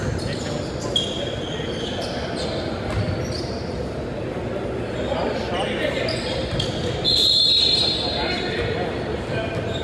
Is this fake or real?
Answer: real